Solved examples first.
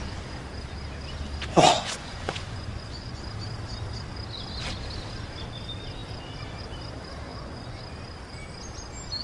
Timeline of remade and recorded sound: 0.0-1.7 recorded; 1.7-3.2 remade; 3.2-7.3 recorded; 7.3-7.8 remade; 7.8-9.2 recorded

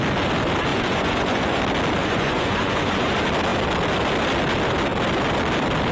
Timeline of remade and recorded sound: 0.0-0.7 recorded; 0.7-1.6 remade; 1.6-2.0 recorded; 2.0-3.1 remade; 3.1-5.9 recorded